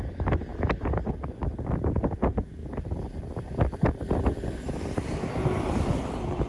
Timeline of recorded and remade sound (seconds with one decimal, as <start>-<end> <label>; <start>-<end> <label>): 0.0-0.5 recorded; 0.5-1.1 remade; 1.1-2.6 recorded; 2.6-3.1 remade; 3.1-6.5 recorded